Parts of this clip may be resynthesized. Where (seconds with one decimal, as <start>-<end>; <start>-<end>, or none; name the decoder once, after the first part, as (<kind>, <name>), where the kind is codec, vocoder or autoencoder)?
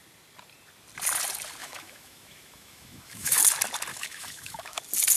1.6-3.4 (autoencoder, DAC-VAE); 3.9-4.8